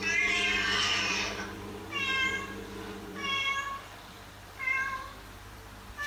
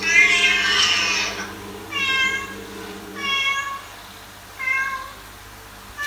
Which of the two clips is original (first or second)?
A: second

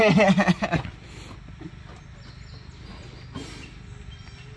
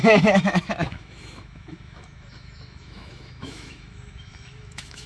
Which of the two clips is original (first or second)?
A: first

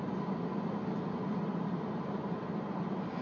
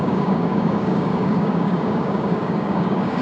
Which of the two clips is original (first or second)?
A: first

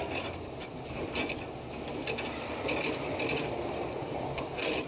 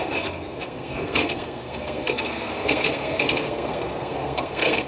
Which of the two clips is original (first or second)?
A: first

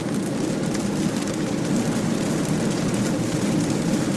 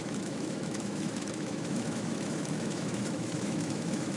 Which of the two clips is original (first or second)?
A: first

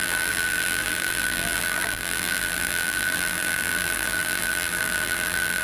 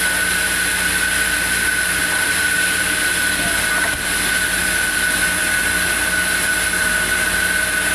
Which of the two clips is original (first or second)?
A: second